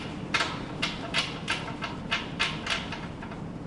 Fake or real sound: real